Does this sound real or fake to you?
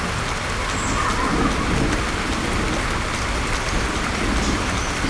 real